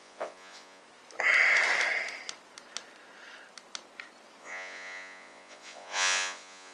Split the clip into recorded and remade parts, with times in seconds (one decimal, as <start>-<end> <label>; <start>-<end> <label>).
0.0-0.8 remade; 0.8-4.4 recorded; 4.4-6.7 remade